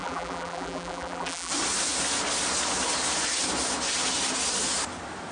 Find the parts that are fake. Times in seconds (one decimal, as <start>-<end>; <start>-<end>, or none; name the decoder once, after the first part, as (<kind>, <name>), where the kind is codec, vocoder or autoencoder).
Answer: 0.0-1.5 (vocoder, BigVGAN v2)